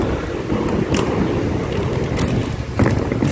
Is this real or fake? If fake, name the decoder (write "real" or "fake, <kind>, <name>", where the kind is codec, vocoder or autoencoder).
real